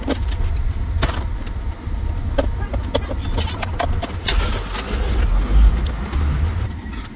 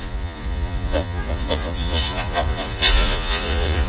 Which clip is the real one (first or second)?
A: first